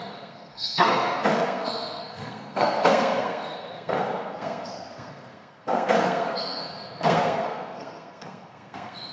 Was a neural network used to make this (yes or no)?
yes